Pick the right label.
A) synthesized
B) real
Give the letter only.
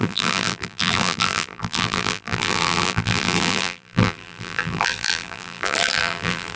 A